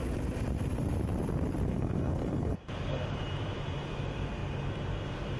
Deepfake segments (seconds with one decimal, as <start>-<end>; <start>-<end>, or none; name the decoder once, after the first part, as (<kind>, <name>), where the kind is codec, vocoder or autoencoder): 1.7-2.6 (codec, SNAC)